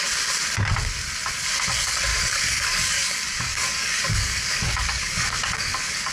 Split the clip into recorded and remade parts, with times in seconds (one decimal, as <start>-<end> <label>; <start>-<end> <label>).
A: 0.0-2.1 recorded; 2.1-6.1 remade